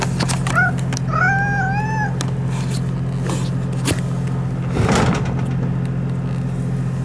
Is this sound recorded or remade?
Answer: recorded